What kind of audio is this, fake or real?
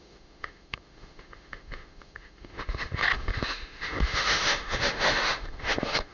fake